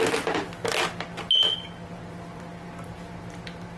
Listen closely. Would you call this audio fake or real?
real